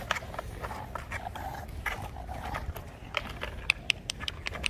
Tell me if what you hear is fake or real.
real